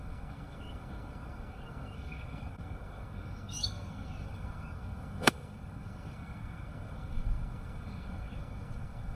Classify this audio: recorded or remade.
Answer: remade